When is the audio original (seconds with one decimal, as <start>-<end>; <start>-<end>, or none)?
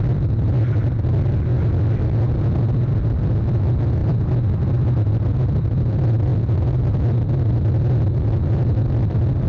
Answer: 1.5-3.4; 4.0-4.7